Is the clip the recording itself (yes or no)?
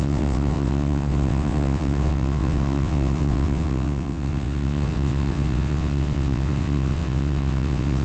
no